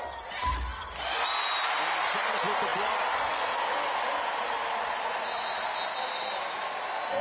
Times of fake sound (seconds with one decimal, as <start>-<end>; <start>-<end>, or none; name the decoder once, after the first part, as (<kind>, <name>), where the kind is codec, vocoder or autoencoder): none